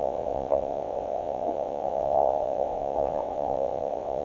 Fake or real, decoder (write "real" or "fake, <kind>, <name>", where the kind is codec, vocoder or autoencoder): fake, vocoder, WaveNeXt